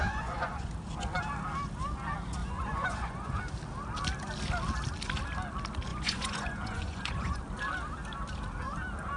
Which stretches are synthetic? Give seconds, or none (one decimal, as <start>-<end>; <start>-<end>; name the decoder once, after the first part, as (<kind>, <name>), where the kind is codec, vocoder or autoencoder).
0.0-0.7 (vocoder, Vocos); 2.4-3.4; 5.9-7.4